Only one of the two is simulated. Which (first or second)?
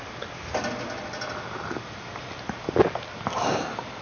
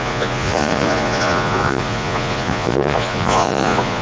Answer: second